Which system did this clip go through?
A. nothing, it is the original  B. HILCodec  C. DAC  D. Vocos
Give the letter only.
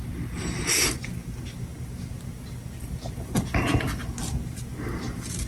A